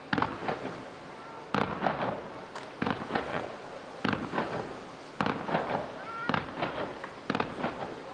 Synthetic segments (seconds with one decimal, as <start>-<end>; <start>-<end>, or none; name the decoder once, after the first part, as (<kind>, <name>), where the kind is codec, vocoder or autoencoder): 3.3-4.0 (vocoder, Vocos)